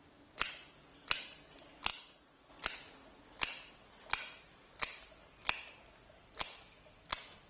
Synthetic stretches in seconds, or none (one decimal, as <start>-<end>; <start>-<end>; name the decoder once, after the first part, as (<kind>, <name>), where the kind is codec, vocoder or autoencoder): none